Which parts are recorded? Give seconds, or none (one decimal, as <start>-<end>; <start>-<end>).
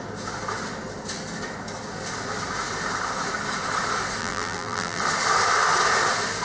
0.0-4.2; 5.0-6.4